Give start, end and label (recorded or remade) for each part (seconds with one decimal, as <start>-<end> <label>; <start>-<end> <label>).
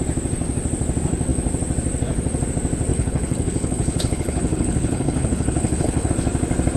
0.0-2.9 recorded; 2.9-6.1 remade; 6.1-6.8 recorded